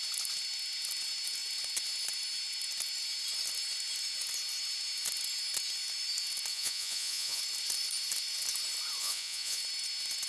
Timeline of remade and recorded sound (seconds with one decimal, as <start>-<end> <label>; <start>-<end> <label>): 0.0-6.5 recorded; 6.5-7.4 remade; 7.4-9.0 recorded; 9.0-9.6 remade; 9.6-10.3 recorded